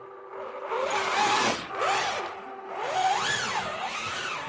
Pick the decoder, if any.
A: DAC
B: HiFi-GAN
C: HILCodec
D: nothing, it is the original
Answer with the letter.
D